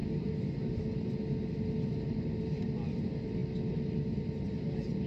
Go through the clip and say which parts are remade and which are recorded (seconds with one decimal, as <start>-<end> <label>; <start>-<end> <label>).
0.0-5.1 recorded

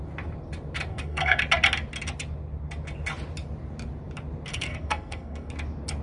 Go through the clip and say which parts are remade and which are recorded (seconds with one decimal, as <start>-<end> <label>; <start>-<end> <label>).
0.0-0.9 recorded; 0.9-1.4 remade; 1.4-4.5 recorded; 4.5-5.5 remade; 5.5-6.0 recorded